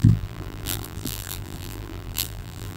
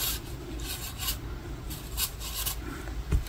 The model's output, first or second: first